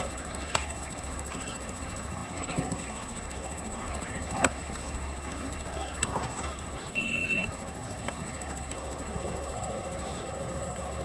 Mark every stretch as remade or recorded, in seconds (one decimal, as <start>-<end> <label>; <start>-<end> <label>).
0.0-11.0 remade